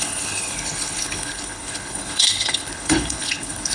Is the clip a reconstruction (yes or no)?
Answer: yes